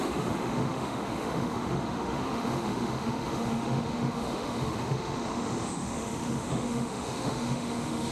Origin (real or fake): fake